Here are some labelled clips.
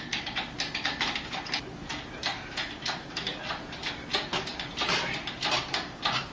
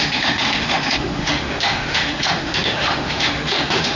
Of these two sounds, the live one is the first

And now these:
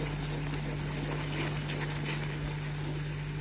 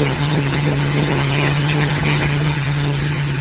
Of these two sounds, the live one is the first